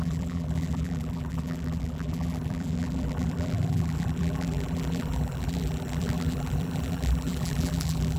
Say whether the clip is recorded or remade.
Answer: remade